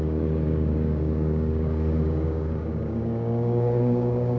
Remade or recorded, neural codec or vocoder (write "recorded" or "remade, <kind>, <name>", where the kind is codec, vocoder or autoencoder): remade, codec, DAC